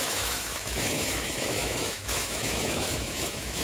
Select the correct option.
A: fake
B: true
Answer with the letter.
A